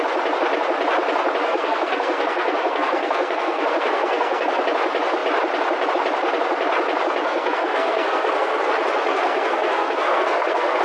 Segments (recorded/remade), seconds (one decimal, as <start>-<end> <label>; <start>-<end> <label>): 0.0-1.4 recorded; 1.4-4.6 remade; 4.6-7.2 recorded; 7.2-8.7 remade; 8.7-9.1 recorded; 9.1-10.8 remade